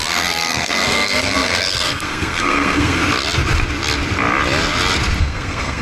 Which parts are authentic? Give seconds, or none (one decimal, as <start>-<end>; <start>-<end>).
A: 3.0-5.2